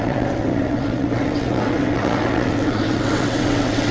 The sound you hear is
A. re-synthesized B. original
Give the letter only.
A